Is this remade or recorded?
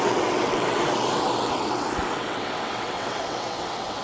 remade